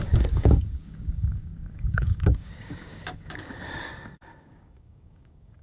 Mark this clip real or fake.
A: fake